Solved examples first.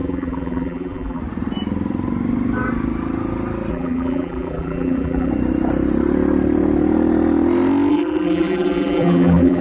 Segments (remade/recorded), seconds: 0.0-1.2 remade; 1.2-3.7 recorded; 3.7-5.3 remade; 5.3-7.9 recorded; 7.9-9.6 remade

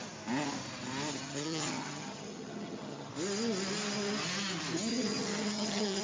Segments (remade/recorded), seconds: 0.0-1.1 recorded; 1.1-3.1 remade; 3.1-4.9 recorded; 4.9-6.0 remade

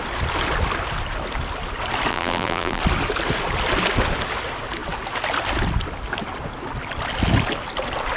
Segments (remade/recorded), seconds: 0.0-2.1 recorded; 2.1-2.8 remade; 2.8-8.2 recorded

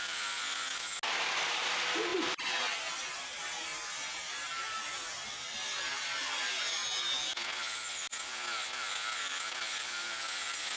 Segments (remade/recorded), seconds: 0.0-0.4 remade; 0.4-1.1 recorded; 1.1-3.7 remade; 3.7-4.3 recorded; 4.3-6.8 remade; 6.8-9.2 recorded; 9.2-10.8 remade

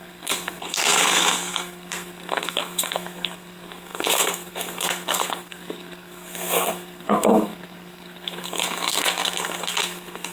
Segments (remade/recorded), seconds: 0.0-10.3 remade

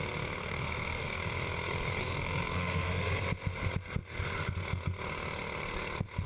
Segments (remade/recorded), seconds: 0.0-0.4 recorded; 0.4-1.2 remade; 1.2-2.0 recorded; 2.0-3.2 remade; 3.2-6.3 recorded